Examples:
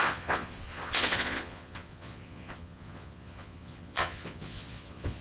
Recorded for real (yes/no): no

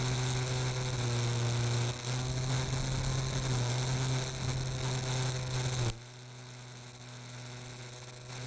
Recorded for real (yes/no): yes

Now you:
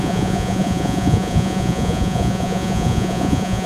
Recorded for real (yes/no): no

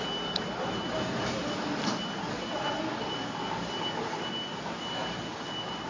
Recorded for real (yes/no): yes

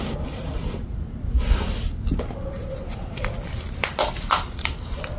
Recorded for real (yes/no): yes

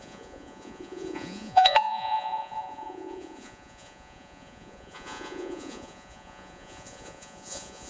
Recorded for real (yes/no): no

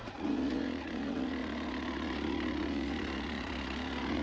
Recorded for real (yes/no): no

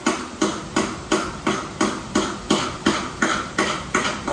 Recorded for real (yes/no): yes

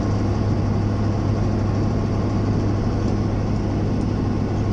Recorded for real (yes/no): yes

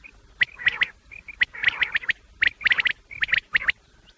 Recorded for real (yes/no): yes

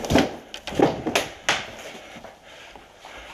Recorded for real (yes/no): yes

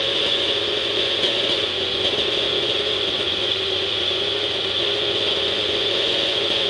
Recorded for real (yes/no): no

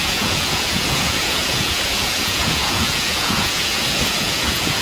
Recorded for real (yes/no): no